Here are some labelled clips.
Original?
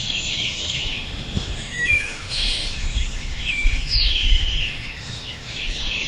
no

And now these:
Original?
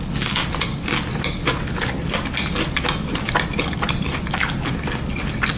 yes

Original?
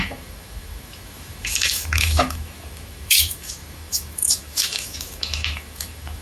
no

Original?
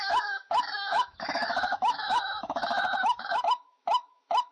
no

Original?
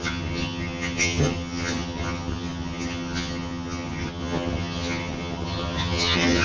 no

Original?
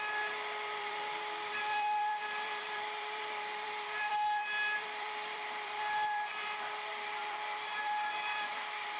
no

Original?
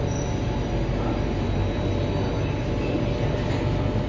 yes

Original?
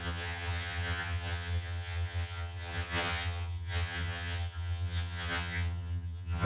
no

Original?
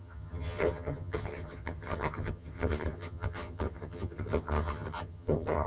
no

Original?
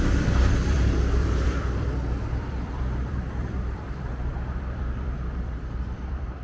no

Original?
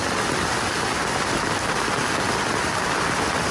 yes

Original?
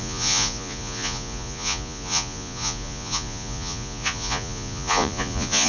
no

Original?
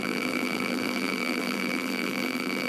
no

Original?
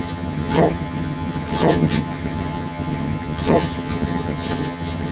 no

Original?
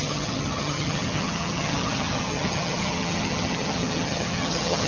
no